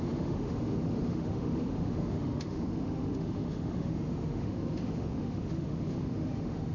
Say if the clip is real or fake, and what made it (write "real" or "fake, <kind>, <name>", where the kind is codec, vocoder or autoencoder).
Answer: fake, autoencoder, DAC-VAE